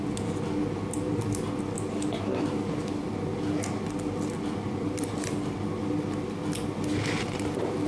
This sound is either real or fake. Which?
real